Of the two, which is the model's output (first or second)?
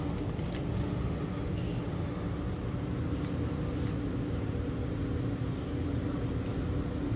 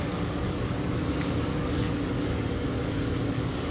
second